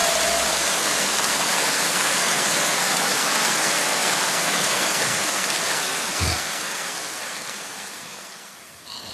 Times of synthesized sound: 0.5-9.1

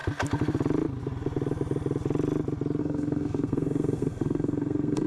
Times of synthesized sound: 2.8-5.1

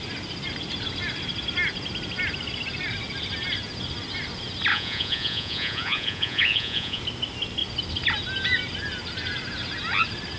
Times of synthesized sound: 4.7-7.0

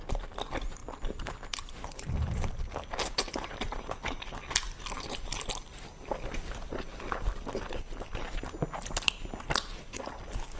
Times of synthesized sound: 0.8-2.7